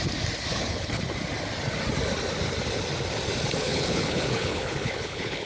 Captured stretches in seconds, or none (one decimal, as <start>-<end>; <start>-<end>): 0.0-0.5; 1.0-3.6